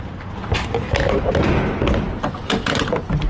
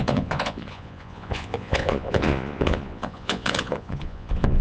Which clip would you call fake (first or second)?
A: second